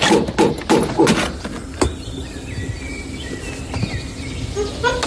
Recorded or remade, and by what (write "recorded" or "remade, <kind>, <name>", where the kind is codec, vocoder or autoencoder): recorded